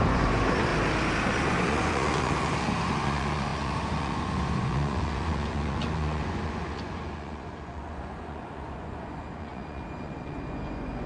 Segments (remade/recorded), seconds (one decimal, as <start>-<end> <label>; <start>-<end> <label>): 0.0-0.7 remade; 0.7-1.4 recorded; 1.4-11.1 remade